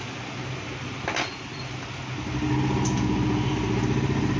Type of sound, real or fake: real